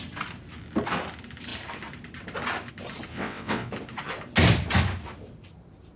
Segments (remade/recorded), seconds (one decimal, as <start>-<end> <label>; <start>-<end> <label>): 0.0-3.1 recorded; 3.1-3.7 remade; 3.7-6.0 recorded